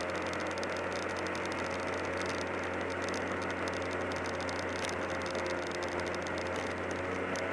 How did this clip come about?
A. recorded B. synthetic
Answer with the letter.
A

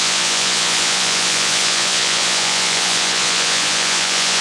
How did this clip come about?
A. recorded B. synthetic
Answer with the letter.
B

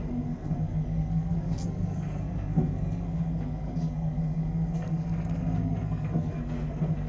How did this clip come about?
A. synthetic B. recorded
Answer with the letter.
A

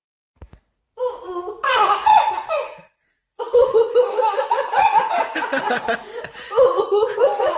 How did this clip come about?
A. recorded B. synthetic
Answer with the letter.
B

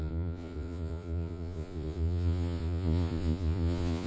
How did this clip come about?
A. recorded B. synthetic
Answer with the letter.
B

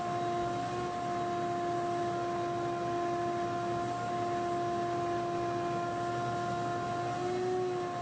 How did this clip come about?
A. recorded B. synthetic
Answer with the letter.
A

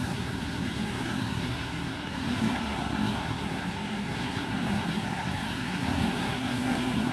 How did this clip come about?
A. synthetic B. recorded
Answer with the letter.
A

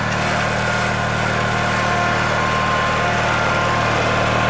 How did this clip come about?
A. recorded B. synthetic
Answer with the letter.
A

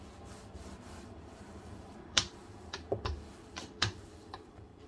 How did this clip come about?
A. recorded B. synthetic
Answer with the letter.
B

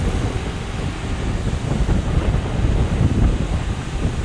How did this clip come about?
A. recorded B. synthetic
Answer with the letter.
A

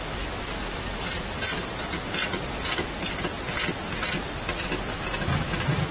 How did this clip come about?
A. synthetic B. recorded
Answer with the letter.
B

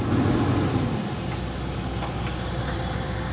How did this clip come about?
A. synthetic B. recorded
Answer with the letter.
B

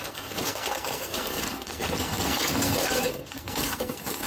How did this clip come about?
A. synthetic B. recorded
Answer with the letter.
A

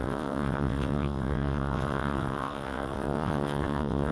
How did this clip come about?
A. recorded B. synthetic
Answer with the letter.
B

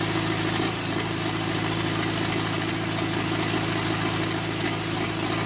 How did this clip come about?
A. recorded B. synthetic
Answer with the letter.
A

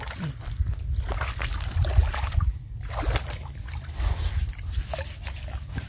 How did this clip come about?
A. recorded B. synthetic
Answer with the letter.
A